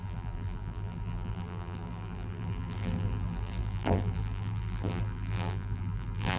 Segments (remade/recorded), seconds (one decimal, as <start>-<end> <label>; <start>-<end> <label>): 0.0-6.4 remade